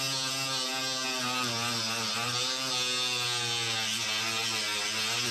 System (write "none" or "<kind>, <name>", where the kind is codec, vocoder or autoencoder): none